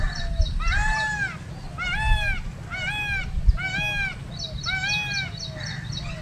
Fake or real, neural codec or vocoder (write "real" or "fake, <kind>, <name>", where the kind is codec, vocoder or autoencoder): real